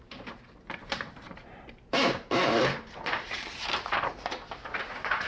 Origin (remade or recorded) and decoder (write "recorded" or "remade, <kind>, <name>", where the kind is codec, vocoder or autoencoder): remade, vocoder, BigVGAN v2